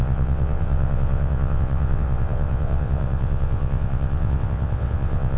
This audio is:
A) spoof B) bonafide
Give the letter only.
A